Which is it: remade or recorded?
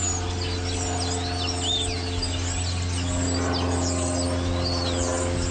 recorded